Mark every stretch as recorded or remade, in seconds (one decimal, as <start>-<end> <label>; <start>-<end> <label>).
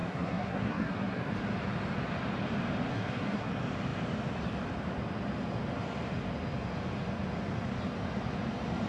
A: 0.0-1.3 remade; 1.3-2.9 recorded; 2.9-3.5 remade; 3.5-8.9 recorded